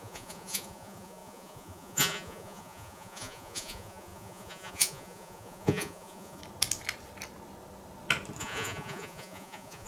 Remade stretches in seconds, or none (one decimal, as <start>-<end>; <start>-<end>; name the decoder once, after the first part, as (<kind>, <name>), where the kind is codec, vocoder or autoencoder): 0.0-6.4 (vocoder, Vocos); 8.4-9.9